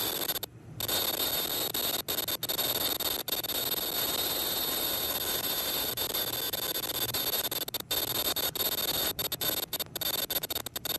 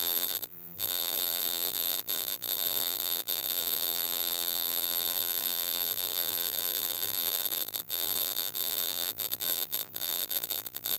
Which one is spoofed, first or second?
second